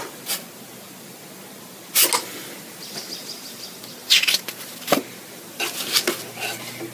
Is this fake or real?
real